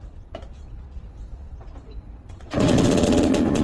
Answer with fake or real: fake